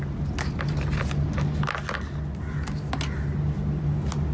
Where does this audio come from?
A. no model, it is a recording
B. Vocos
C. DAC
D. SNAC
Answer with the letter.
A